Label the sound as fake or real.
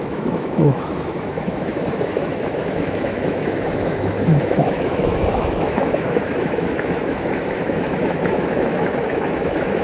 fake